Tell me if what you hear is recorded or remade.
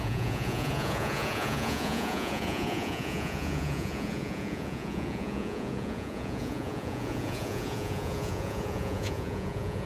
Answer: remade